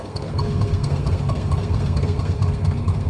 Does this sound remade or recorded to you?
remade